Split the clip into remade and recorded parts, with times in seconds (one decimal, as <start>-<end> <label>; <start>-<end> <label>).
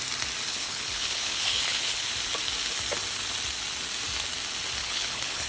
0.0-0.5 recorded; 0.5-2.1 remade; 2.1-4.8 recorded; 4.8-5.5 remade